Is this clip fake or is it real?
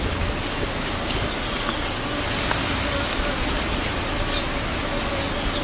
real